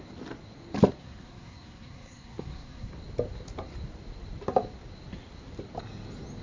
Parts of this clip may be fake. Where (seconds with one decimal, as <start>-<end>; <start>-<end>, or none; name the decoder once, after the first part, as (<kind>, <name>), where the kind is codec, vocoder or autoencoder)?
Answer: 1.0-2.9 (codec, SNAC)